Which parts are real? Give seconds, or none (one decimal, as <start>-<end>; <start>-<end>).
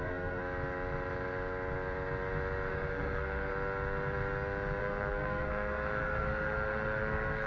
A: 0.4-2.7; 3.5-4.8